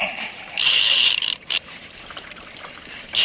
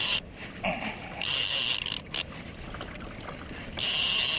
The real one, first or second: second